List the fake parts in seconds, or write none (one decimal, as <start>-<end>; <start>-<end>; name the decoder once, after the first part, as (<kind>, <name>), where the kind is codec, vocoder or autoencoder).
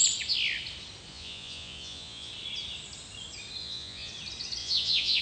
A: 1.1-2.3 (vocoder, Vocos); 3.6-4.1; 4.6-5.2